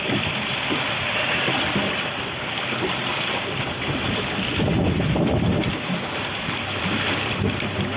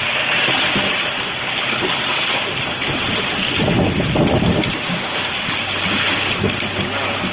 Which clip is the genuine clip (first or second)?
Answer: second